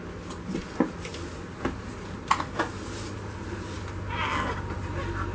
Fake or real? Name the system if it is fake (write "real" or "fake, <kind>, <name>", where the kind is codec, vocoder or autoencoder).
real